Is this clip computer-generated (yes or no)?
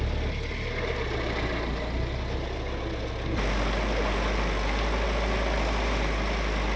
no